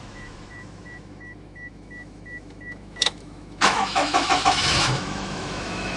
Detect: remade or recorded remade